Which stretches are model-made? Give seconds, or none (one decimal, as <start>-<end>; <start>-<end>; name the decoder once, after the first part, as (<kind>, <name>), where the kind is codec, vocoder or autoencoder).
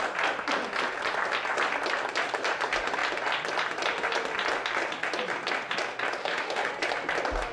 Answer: 6.2-6.7 (autoencoder, DAC-VAE)